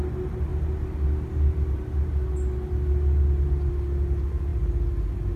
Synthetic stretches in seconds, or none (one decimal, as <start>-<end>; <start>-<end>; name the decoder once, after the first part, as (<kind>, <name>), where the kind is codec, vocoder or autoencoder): none